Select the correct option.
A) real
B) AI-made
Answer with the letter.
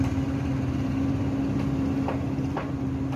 A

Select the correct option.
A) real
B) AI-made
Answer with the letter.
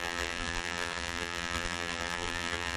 B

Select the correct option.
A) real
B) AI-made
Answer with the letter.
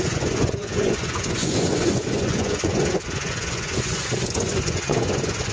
B